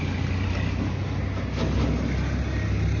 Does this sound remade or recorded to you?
recorded